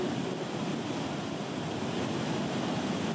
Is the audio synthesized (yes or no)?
no